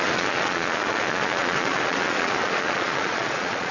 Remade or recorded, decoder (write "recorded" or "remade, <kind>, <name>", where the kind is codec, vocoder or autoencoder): remade, vocoder, Vocos